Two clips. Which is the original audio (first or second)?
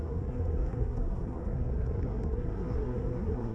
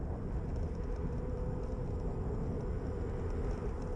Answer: second